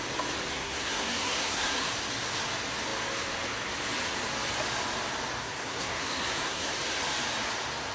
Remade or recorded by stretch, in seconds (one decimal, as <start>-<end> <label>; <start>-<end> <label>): 0.0-0.5 recorded; 0.5-1.9 remade; 1.9-5.4 recorded; 5.4-6.7 remade; 6.7-7.9 recorded